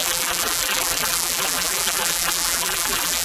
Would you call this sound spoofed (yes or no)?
yes